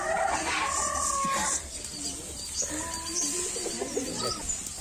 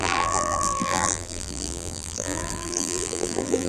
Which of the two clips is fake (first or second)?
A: second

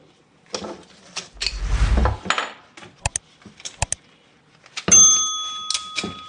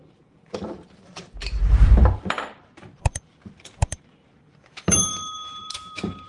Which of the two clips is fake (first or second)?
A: second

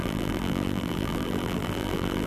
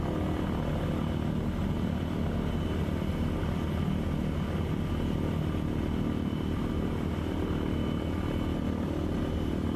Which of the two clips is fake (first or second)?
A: first